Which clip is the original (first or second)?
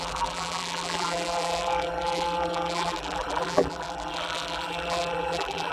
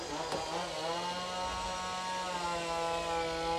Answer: second